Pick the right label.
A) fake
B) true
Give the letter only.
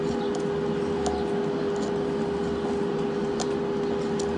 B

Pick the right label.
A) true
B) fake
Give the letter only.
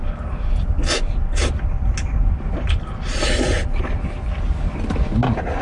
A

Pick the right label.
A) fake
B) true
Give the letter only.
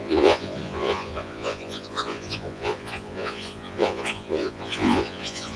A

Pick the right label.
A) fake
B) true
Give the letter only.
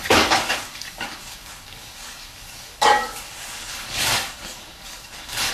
A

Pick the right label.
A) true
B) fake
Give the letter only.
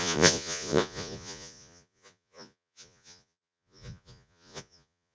B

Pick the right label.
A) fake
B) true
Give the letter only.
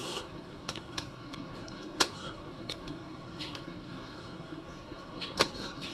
A